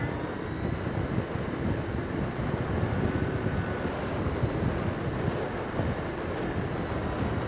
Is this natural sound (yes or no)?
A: yes